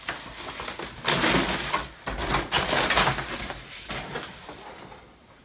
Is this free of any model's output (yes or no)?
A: yes